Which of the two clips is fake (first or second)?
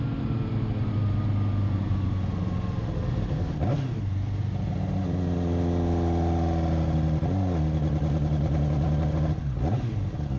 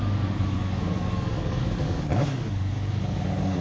second